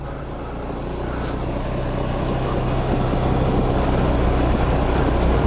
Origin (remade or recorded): recorded